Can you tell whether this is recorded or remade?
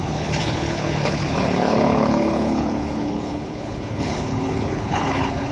remade